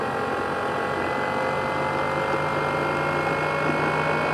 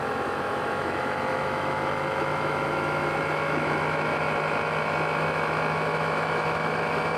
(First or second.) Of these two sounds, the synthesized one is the second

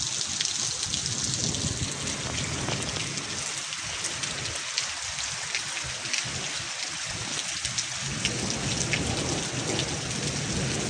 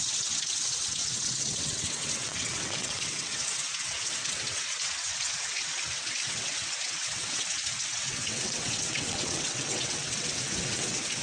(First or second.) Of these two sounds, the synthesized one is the second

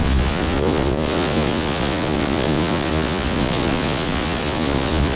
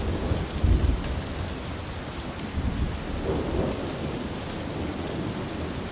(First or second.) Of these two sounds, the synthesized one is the first